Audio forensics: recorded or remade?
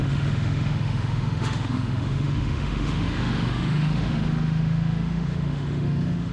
remade